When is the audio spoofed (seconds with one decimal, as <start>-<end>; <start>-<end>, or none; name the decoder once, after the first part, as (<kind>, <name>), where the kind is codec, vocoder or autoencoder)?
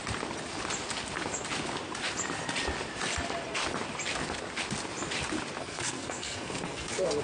5.6-7.2 (codec, SNAC)